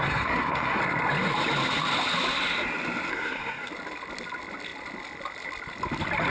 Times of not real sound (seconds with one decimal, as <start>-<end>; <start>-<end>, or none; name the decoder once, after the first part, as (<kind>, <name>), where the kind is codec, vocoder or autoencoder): 0.0-0.8 (codec, SNAC); 3.1-3.7